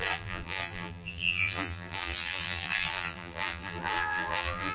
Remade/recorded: remade